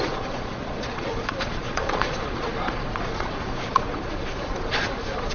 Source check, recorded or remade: remade